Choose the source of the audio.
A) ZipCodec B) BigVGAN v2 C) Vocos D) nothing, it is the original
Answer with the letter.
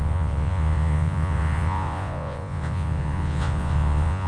C